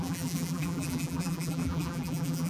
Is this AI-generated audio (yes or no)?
yes